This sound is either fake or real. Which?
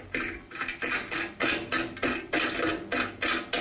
real